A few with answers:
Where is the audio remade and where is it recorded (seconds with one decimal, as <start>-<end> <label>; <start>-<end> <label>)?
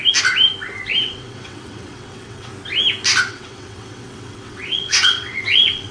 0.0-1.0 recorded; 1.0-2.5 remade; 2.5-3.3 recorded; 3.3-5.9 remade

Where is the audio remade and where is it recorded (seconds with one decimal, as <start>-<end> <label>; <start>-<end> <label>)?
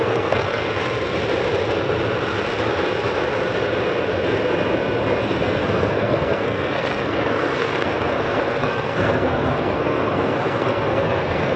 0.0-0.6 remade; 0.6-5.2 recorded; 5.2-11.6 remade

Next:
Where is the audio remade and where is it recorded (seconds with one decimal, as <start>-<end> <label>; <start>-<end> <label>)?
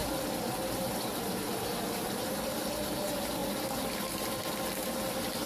0.0-0.7 recorded; 0.7-3.4 remade; 3.4-4.1 recorded; 4.1-5.5 remade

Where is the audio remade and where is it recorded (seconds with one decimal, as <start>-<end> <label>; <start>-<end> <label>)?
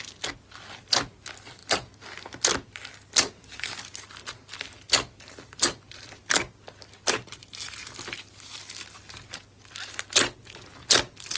0.0-11.4 recorded